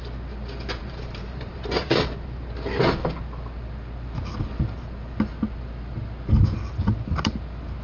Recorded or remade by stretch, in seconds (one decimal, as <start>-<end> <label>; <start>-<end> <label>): 0.0-0.8 recorded; 0.8-2.4 remade; 2.4-7.8 recorded